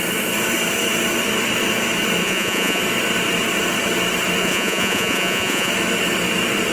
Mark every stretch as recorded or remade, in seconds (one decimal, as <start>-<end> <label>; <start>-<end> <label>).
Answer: 0.0-2.2 recorded; 2.2-2.8 remade; 2.8-4.4 recorded; 4.4-5.7 remade; 5.7-6.7 recorded